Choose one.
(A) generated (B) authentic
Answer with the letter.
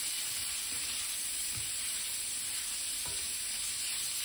A